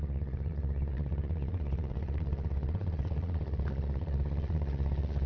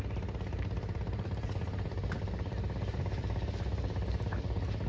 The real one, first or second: second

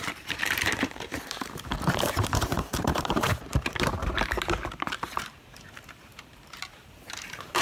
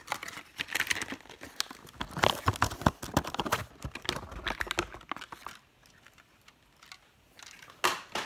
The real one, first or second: second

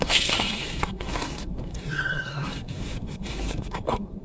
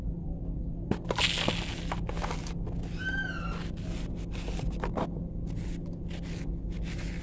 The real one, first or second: second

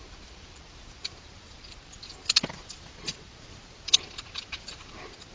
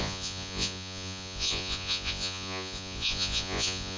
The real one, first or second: first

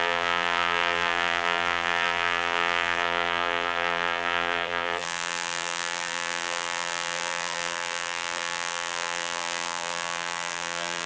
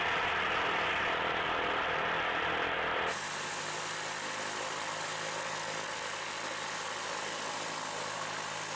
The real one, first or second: second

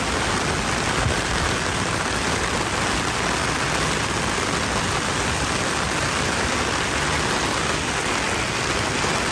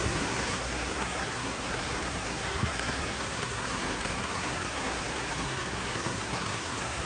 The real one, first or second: first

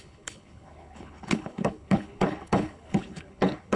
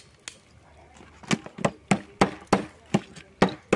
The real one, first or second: second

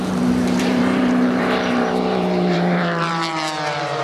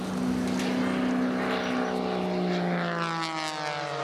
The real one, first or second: second